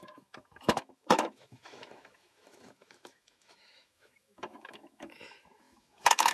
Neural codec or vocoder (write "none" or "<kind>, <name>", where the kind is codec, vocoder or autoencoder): autoencoder, DAC-VAE